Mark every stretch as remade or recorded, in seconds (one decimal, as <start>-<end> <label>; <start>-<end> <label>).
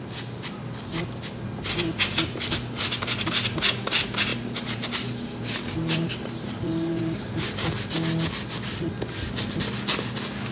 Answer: 0.0-4.3 recorded; 4.3-7.0 remade; 7.0-10.5 recorded